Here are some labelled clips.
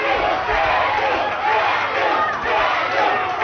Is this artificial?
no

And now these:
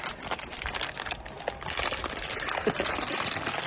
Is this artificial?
no